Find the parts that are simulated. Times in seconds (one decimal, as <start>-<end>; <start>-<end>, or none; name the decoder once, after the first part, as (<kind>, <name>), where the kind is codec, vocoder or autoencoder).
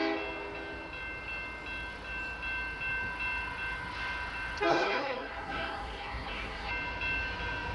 4.7-6.7 (codec, SNAC)